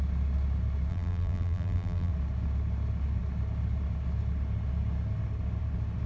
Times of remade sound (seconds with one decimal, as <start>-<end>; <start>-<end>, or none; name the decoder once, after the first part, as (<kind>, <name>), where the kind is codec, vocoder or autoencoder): 0.9-2.1 (vocoder, BigVGAN v2)